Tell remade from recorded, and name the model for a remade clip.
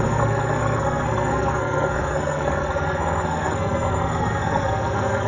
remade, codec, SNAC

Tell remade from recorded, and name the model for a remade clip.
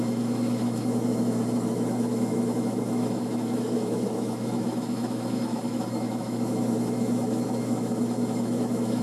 remade, autoencoder, DAC-VAE